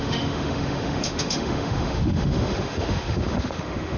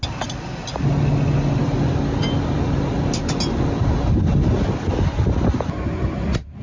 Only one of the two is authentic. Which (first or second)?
second